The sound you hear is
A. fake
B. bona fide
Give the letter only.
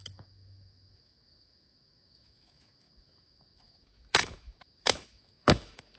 A